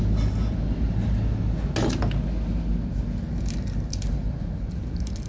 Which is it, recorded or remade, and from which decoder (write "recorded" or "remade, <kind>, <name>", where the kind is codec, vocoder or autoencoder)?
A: recorded